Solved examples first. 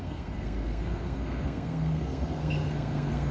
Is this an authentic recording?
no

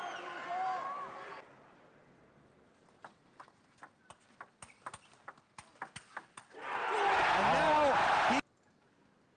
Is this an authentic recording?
yes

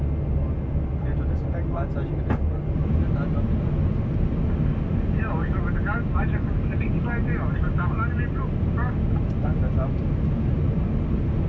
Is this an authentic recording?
yes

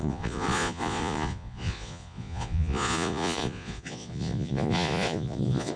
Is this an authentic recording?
no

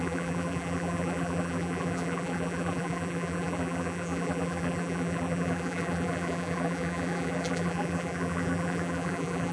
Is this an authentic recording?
no